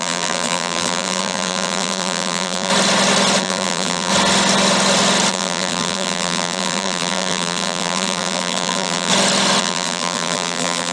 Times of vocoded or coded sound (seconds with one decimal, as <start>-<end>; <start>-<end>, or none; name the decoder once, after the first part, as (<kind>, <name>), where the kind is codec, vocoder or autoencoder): 0.0-2.7 (vocoder, BigVGAN v2); 3.4-4.1; 5.3-9.1; 9.6-10.9